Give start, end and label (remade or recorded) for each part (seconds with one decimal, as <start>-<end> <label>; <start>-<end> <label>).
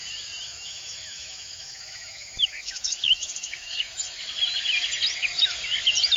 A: 0.0-0.5 recorded; 0.5-4.2 remade; 4.2-6.2 recorded